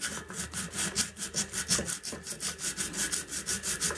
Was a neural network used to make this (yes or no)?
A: no